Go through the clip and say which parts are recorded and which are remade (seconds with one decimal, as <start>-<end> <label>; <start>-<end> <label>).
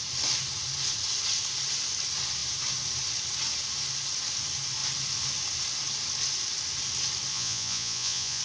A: 0.0-7.3 recorded; 7.3-8.4 remade